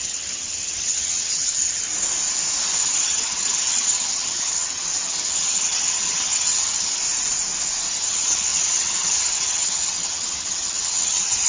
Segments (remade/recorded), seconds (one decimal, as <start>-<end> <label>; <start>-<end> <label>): 0.0-1.9 remade; 1.9-2.8 recorded; 2.8-7.0 remade; 7.0-7.9 recorded; 7.9-11.5 remade